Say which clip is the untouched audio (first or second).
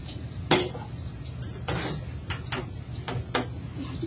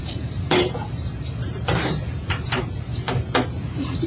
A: first